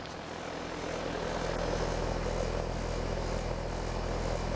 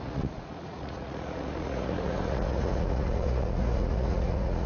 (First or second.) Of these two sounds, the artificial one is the second